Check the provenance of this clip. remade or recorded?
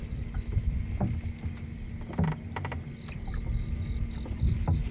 recorded